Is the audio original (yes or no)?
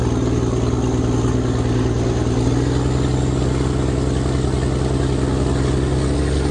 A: yes